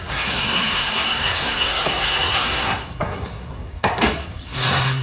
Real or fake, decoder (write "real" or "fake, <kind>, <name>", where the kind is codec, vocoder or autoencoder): fake, codec, SNAC